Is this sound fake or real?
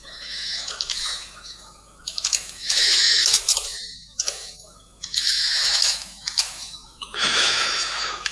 fake